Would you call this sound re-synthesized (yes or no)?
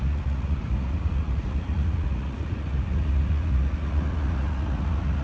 yes